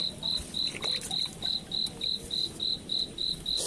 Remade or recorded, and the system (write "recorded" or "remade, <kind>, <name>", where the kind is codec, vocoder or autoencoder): recorded